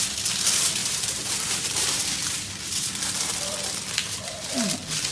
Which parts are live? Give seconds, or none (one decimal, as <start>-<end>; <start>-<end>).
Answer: 0.0-0.8; 2.5-4.0; 4.5-5.1